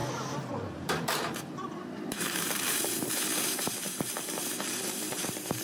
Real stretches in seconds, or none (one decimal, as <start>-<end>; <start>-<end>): 0.0-0.5